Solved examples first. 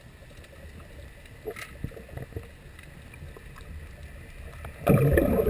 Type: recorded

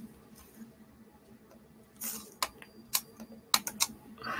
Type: recorded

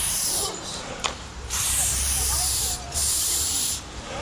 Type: remade